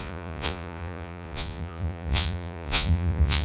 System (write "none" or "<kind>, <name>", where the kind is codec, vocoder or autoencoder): vocoder, Vocos